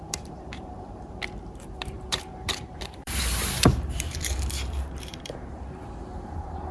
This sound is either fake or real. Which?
fake